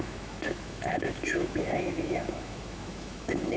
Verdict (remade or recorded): remade